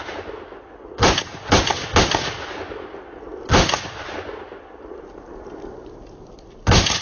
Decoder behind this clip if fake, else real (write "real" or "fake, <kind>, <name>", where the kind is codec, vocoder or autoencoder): real